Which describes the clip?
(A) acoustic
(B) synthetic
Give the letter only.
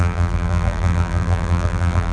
B